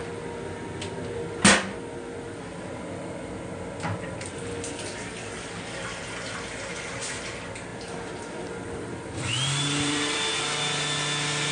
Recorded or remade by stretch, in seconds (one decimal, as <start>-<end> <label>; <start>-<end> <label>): 0.0-7.7 recorded; 7.7-10.4 remade; 10.4-11.5 recorded